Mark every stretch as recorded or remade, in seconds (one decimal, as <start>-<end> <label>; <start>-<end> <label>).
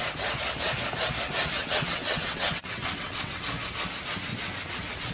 0.0-1.6 recorded; 1.6-3.4 remade; 3.4-5.1 recorded